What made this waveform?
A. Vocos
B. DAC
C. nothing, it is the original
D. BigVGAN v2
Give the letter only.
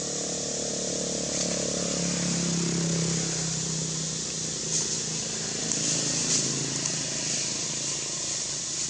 C